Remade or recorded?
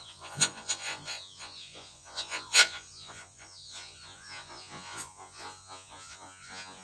remade